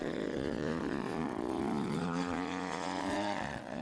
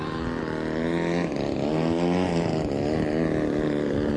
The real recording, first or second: second